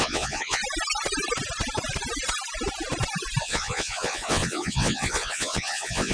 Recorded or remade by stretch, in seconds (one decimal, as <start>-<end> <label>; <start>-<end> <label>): 0.0-0.6 remade; 0.6-3.4 recorded; 3.4-6.1 remade